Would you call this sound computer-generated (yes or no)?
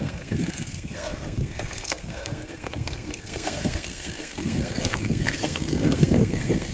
yes